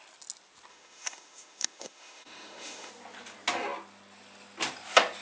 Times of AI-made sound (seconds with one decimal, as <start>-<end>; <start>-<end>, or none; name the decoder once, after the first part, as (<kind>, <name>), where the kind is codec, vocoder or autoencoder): 0.7-2.9 (autoencoder, DAC-VAE)